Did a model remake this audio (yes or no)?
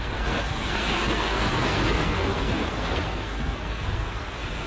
yes